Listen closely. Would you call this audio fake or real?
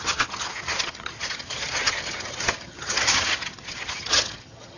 fake